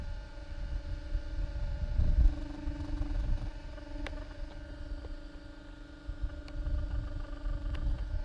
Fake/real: real